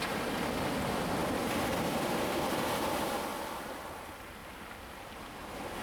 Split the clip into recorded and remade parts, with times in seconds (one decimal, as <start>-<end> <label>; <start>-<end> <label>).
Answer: 0.0-1.2 recorded; 1.2-2.2 remade; 2.2-3.3 recorded; 3.3-4.0 remade; 4.0-5.8 recorded